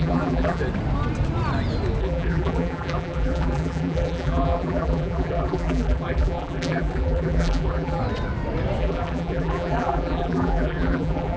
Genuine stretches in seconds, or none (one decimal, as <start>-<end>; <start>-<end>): 0.6-2.0; 8.0-8.8